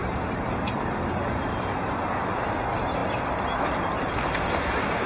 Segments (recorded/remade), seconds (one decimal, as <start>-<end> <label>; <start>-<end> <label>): 0.0-2.2 remade; 2.2-5.1 recorded